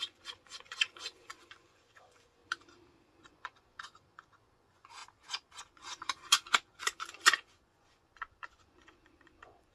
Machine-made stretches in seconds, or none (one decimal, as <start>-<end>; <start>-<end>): 0.0-2.4; 3.0-5.0; 5.6-9.7